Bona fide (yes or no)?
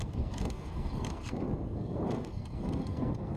no